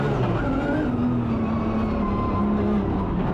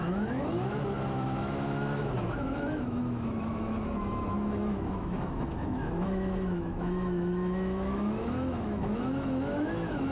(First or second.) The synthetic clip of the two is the second